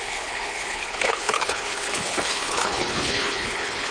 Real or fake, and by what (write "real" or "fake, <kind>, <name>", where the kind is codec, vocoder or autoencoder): fake, codec, HILCodec